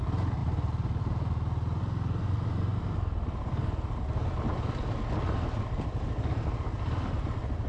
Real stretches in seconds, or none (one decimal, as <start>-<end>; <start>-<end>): 0.0-2.7; 3.2-7.7